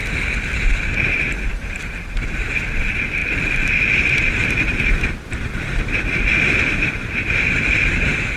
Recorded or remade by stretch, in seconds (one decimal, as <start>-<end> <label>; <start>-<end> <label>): 0.0-0.7 recorded; 0.7-3.2 remade; 3.2-4.1 recorded; 4.1-8.4 remade